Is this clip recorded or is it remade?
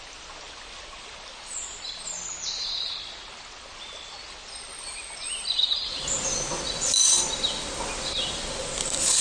recorded